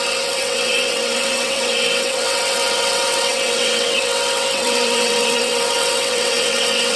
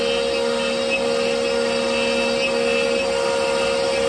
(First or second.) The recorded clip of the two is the second